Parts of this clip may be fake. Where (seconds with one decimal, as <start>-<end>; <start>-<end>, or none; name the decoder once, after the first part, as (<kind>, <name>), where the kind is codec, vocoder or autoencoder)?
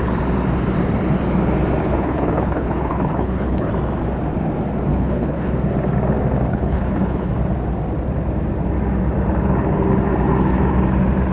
1.8-3.7 (codec, HILCodec); 4.9-5.5; 6.5-7.3